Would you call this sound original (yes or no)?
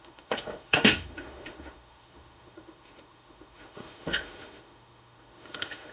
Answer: no